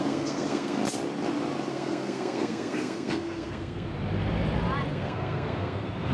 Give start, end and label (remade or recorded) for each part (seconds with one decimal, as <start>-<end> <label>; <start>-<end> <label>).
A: 0.0-0.8 remade; 0.8-1.7 recorded; 1.7-3.9 remade; 3.9-4.9 recorded; 4.9-6.1 remade